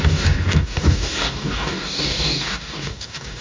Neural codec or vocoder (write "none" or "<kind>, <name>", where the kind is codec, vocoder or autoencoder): codec, DAC